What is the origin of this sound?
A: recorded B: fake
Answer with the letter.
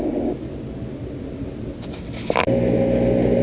A